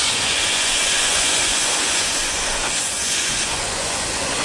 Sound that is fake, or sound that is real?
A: fake